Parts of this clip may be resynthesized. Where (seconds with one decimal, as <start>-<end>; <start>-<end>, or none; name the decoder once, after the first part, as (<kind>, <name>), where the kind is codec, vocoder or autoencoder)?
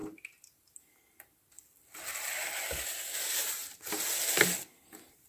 none